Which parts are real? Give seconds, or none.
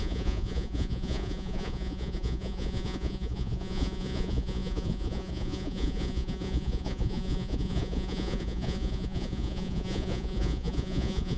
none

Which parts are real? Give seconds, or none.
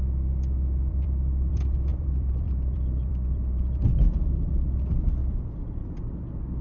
0.0-0.9; 1.5-1.9; 4.5-5.2; 6.0-6.6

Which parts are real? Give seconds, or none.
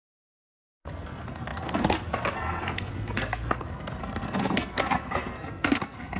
none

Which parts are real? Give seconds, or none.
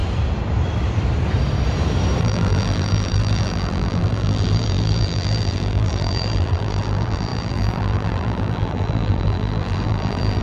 0.0-2.2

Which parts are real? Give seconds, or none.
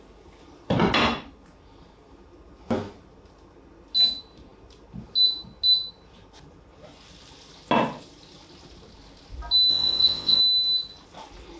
0.0-9.7; 10.4-11.6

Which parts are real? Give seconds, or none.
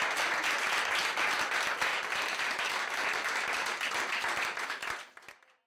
0.0-1.9; 5.3-5.7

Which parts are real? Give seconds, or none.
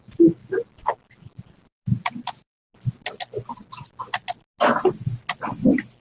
0.0-6.0